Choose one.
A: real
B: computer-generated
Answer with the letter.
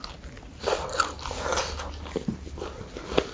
A